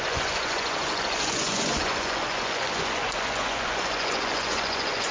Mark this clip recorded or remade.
remade